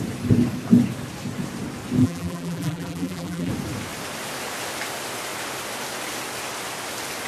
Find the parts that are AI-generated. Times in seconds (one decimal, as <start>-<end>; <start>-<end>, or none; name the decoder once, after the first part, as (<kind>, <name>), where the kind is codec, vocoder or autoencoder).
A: 2.0-3.5 (vocoder, BigVGAN v2)